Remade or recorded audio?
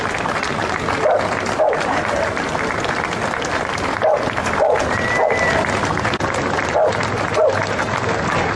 recorded